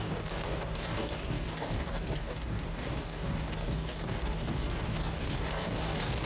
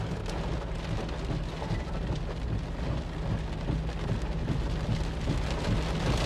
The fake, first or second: first